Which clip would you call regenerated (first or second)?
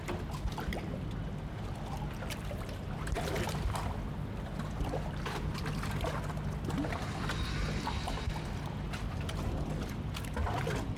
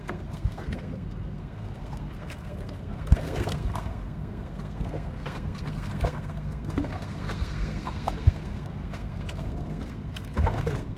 second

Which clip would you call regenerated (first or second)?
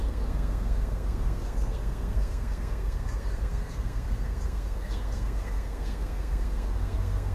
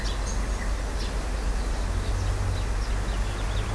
first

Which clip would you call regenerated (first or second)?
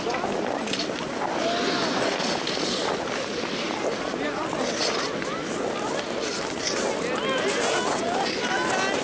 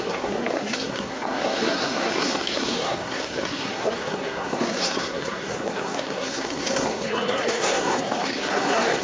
second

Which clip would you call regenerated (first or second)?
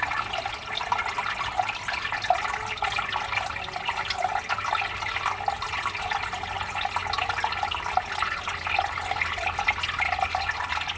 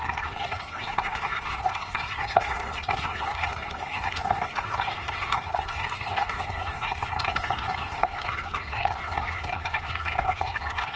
second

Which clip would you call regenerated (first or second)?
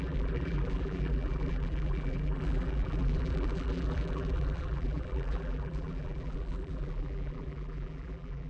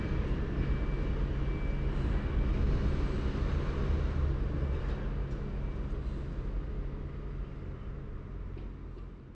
first